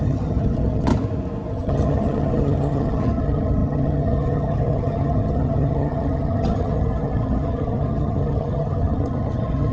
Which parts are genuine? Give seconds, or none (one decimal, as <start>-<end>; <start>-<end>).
0.9-1.5

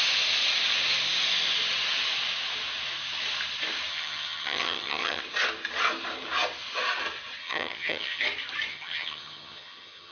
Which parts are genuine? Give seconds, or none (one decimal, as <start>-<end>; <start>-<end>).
0.0-3.9; 5.2-7.4; 8.2-8.7

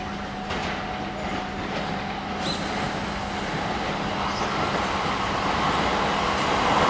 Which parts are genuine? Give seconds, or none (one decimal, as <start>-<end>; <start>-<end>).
0.0-6.9

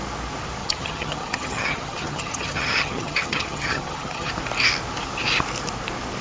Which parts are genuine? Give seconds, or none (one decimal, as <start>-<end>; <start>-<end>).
0.0-0.6; 4.3-6.2